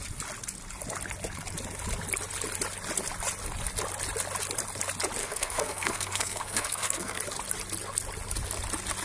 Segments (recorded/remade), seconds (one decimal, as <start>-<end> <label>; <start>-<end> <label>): 0.0-5.2 recorded; 5.2-7.2 remade; 7.2-9.0 recorded